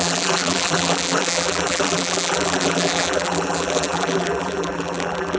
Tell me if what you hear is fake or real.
fake